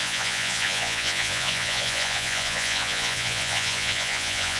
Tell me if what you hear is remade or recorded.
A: remade